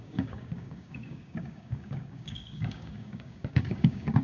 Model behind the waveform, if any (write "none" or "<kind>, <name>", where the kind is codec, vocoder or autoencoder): codec, DAC